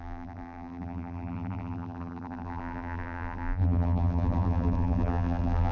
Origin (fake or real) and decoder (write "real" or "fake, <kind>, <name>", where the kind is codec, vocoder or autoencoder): fake, vocoder, BigVGAN v2